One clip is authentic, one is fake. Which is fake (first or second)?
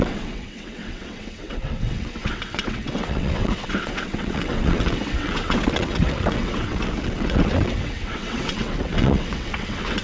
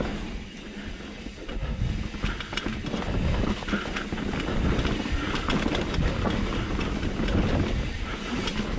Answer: first